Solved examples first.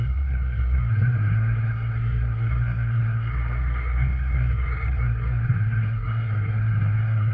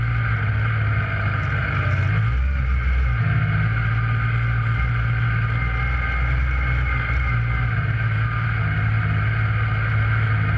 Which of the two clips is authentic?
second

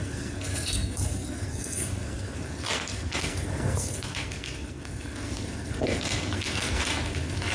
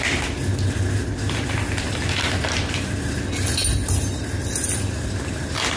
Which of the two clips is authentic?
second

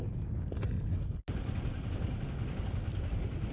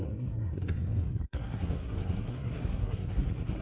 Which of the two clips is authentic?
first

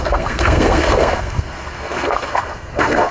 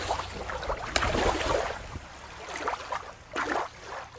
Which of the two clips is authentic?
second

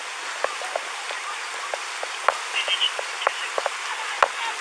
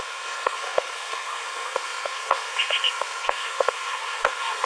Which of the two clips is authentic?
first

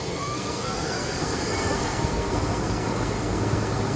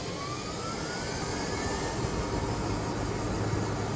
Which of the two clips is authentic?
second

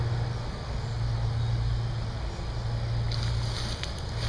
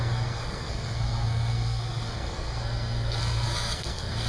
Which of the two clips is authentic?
first